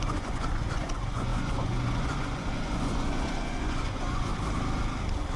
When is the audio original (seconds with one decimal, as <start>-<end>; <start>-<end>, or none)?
4.3-5.4